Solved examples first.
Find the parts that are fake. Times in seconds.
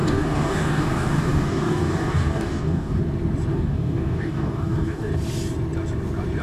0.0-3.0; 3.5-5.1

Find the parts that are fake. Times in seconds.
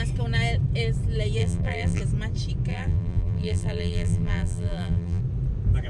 1.4-2.0; 2.7-5.2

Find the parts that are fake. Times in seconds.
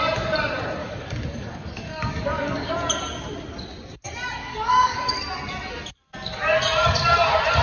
0.8-2.7; 4.4-5.1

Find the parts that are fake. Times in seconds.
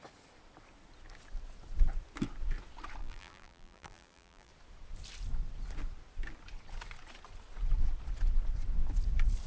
3.0-4.5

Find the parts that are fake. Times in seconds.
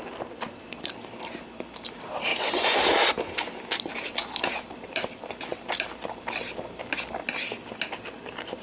2.3-2.8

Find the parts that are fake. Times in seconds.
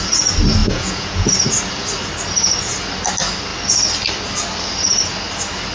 0.6-1.3